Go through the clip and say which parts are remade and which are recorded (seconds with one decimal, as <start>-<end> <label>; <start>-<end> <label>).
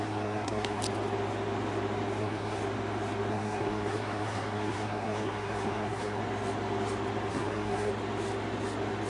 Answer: 0.0-0.8 remade; 0.8-2.2 recorded; 2.2-2.6 remade; 2.6-3.3 recorded; 3.3-6.2 remade; 6.2-7.3 recorded; 7.3-7.9 remade; 7.9-9.1 recorded